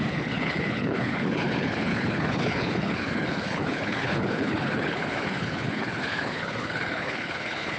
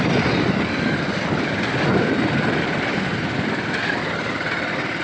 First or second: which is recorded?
second